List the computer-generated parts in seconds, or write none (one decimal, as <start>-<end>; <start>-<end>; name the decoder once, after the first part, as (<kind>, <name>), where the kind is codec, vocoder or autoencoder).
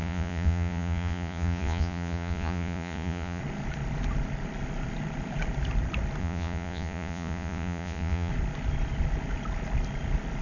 0.0-3.4 (vocoder, Vocos); 6.2-8.3